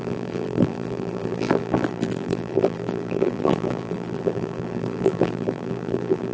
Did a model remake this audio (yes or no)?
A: yes